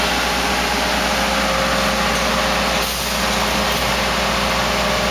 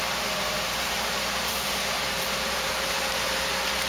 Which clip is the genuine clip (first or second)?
first